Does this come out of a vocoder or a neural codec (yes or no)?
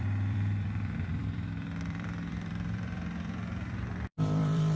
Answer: yes